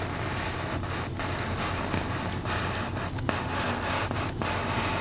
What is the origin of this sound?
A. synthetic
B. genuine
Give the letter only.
B